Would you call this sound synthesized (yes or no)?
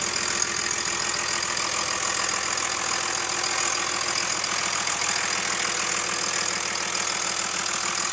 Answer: no